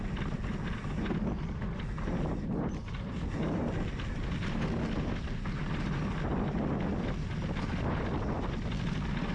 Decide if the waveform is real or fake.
real